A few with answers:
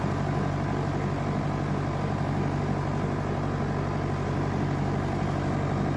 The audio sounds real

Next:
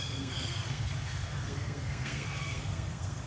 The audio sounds fake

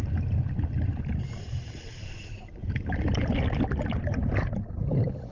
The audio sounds real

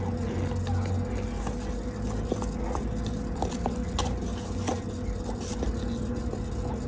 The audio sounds real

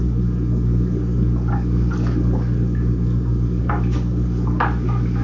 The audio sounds fake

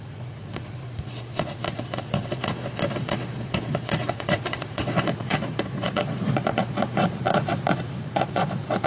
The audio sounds fake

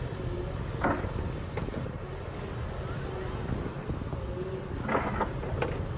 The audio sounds real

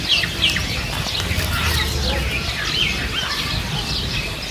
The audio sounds real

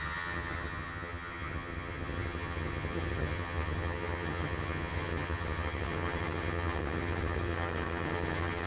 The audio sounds fake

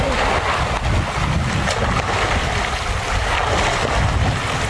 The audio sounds real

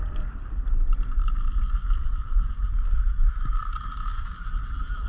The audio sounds real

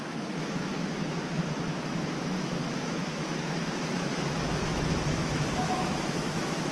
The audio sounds fake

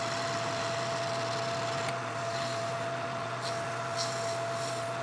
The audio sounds real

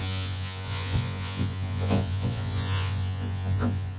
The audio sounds fake